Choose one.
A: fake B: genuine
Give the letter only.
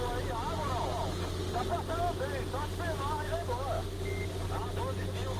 B